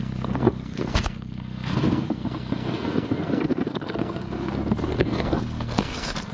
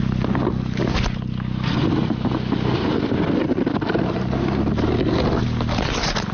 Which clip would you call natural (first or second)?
second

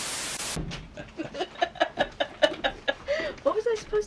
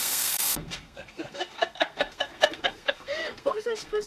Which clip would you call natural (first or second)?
first